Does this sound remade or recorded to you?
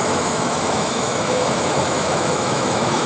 remade